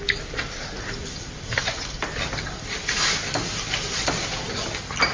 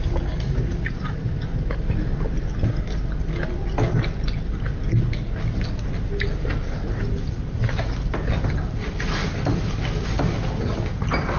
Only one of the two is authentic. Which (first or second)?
second